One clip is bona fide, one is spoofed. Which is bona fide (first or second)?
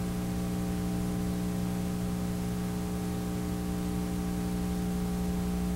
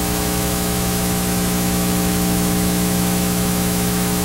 first